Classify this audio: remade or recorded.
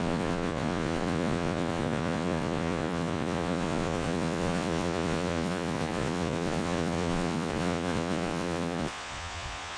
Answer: remade